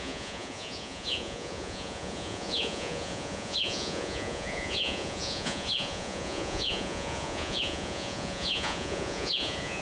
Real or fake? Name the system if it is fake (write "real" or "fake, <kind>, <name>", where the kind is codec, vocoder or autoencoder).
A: fake, vocoder, Vocos